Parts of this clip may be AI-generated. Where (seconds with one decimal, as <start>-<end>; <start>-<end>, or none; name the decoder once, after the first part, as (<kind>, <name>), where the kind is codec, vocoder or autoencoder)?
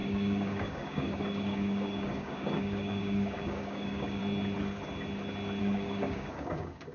0.0-4.2 (codec, DAC); 5.6-6.9